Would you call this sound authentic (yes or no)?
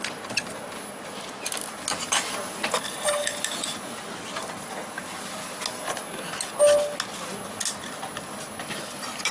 yes